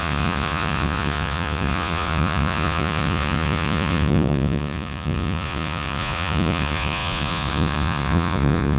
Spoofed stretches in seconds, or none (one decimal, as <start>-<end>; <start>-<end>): 0.0-8.8